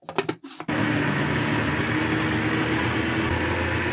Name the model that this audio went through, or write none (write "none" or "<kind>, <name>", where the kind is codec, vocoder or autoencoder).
none